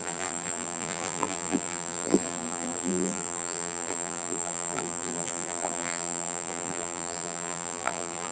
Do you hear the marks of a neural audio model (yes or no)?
yes